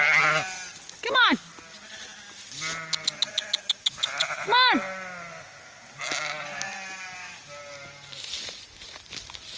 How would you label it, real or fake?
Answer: real